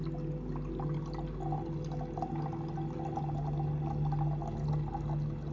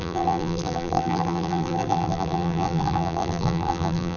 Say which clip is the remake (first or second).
second